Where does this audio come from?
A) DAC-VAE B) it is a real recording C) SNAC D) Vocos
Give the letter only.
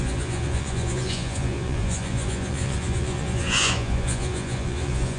D